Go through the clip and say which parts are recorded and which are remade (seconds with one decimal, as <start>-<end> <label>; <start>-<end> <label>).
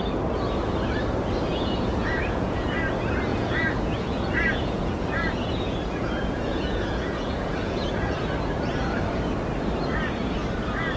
0.0-1.5 recorded; 1.5-2.7 remade; 2.7-3.3 recorded; 3.3-8.2 remade; 8.2-11.0 recorded